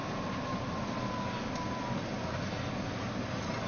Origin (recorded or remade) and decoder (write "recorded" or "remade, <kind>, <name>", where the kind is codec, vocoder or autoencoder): recorded